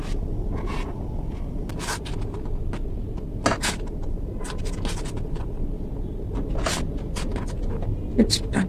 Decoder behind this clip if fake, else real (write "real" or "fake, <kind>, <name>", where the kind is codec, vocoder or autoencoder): real